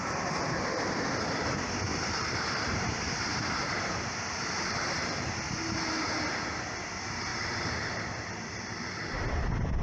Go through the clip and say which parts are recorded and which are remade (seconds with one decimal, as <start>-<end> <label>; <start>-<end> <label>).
0.0-1.9 recorded; 1.9-5.3 remade; 5.3-7.3 recorded; 7.3-9.0 remade; 9.0-9.8 recorded